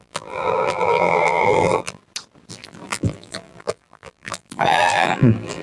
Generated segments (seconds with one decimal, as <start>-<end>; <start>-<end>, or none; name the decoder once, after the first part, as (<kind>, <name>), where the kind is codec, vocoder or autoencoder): 0.0-2.0 (vocoder, BigVGAN v2); 2.5-5.6